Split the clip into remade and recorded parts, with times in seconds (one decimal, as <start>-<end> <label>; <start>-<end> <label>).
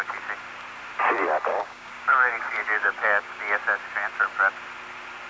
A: 0.0-1.5 recorded; 1.5-3.4 remade; 3.4-5.3 recorded